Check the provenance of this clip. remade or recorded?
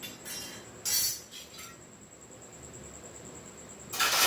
recorded